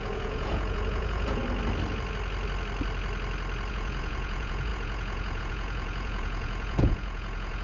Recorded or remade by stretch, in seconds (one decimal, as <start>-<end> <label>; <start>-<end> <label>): 0.0-1.4 remade; 1.4-3.7 recorded; 3.7-7.6 remade